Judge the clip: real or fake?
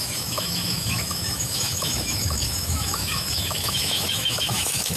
fake